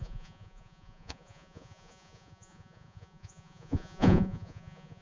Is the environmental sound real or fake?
fake